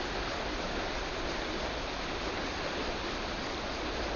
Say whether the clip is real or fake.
real